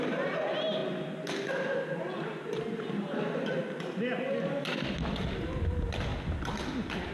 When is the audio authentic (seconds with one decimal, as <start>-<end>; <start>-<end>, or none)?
0.0-7.1